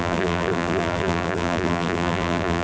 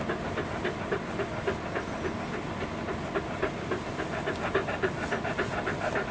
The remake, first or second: first